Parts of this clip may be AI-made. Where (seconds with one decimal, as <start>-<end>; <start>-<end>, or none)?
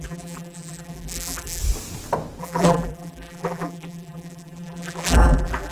0.0-1.6; 2.4-5.7